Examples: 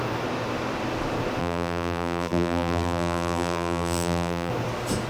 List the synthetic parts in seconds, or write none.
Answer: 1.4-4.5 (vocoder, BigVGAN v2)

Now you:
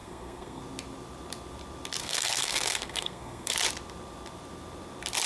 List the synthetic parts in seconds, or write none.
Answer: 0.0-0.6 (codec, SNAC); 2.0-3.5

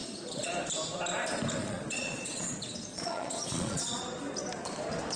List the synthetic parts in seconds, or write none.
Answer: 0.0-0.5 (vocoder, Vocos); 1.6-2.5; 2.9-4.0

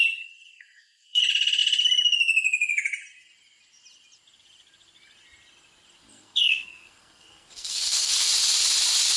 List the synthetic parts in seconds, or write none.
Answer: 0.5-1.2 (codec, SNAC); 6.1-8.3

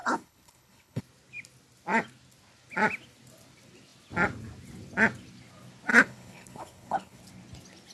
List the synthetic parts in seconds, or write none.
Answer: 0.0-1.0 (codec, HILCodec); 5.9-7.2

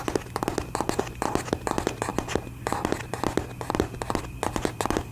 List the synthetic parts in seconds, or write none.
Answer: none